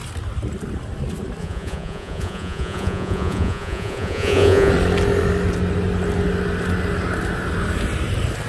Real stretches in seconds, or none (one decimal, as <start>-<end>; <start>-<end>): 0.0-1.4; 4.7-8.5